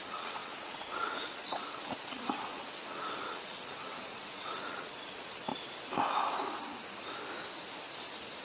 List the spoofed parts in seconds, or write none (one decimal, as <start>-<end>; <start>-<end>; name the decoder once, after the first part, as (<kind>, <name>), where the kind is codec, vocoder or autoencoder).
0.0-5.5 (vocoder, WaveNeXt)